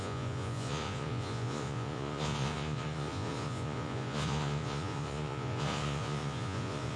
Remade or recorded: remade